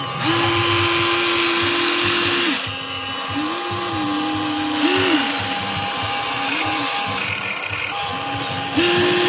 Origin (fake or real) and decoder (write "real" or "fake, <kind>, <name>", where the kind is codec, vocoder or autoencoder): real